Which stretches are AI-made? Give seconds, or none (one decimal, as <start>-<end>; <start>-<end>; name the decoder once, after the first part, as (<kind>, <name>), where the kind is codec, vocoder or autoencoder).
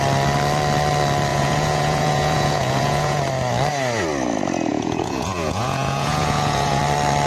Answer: 1.3-3.2 (vocoder, Vocos); 4.7-6.8